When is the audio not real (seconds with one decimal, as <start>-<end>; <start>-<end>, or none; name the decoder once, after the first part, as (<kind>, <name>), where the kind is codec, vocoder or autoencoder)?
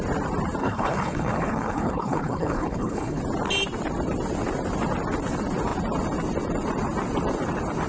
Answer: 0.6-3.2 (codec, HILCodec)